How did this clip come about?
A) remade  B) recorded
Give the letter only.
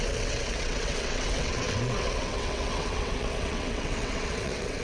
A